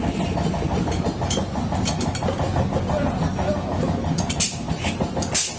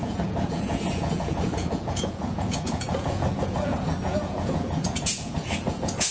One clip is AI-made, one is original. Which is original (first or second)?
first